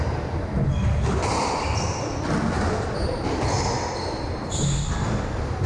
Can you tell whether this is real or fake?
real